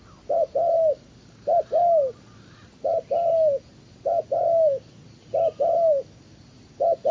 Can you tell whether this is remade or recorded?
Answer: recorded